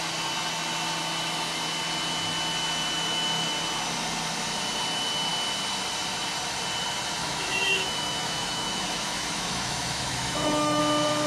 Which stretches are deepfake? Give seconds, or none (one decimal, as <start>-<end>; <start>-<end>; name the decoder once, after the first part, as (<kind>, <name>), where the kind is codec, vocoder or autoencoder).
7.2-10.8 (autoencoder, DAC-VAE)